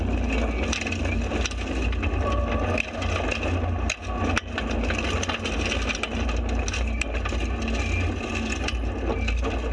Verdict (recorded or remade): recorded